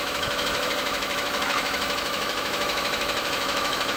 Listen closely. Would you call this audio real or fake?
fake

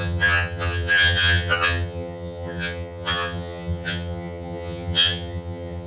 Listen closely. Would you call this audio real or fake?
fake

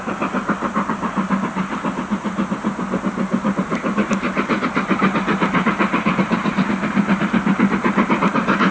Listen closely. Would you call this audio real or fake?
real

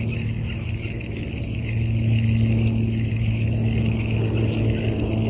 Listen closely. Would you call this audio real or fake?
real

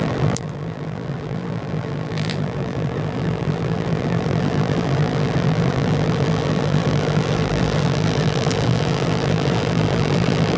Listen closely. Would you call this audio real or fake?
fake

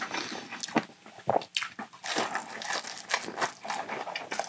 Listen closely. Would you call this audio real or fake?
real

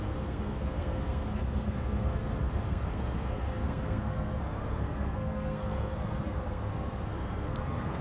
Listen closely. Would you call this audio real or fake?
fake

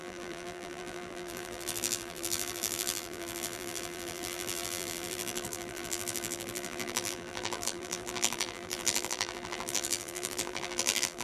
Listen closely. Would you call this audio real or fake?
fake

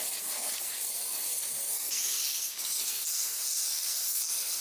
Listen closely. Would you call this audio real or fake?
fake